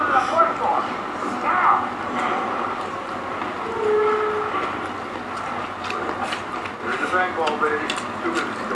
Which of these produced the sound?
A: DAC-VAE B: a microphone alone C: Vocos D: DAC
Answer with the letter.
B